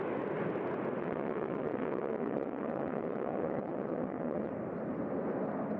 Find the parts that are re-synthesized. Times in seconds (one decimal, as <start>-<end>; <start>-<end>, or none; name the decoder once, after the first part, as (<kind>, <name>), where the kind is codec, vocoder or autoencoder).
1.0-4.5 (vocoder, WaveNeXt)